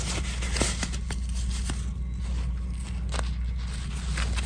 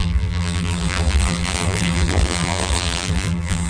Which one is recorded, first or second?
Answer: first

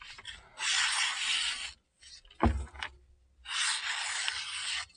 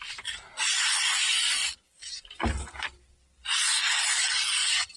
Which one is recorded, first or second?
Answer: first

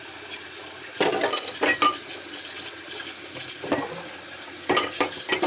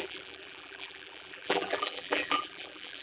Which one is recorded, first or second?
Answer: first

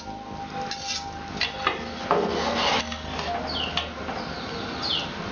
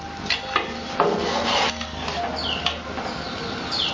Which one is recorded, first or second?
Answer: first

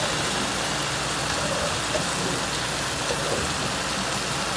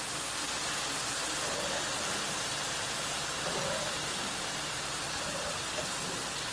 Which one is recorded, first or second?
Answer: first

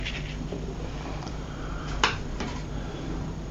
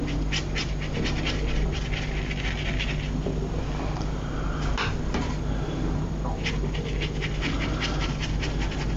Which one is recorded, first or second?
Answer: second